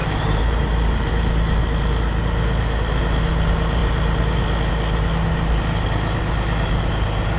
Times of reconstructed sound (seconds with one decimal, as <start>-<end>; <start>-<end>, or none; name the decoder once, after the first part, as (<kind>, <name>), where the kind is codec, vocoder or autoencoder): 0.0-1.1 (vocoder, BigVGAN v2)